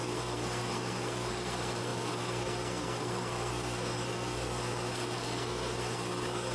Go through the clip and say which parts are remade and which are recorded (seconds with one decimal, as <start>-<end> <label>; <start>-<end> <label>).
0.0-6.5 remade